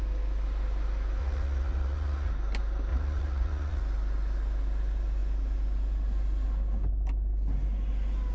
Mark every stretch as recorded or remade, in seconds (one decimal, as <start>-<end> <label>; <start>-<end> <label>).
0.0-1.2 recorded; 1.2-2.3 remade; 2.3-2.9 recorded; 2.9-3.8 remade; 3.8-8.3 recorded